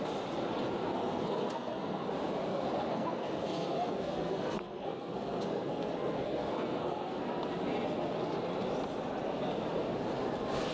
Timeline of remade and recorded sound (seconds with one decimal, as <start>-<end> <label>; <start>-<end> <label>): 0.0-0.9 recorded; 0.9-2.1 remade; 2.1-2.5 recorded; 2.5-7.2 remade; 7.2-10.7 recorded